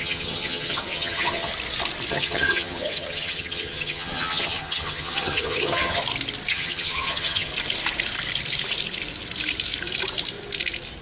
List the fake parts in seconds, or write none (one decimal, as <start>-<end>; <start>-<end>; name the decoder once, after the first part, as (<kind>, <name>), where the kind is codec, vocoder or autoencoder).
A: 0.0-1.5 (vocoder, HiFi-GAN); 2.1-6.0; 6.5-7.5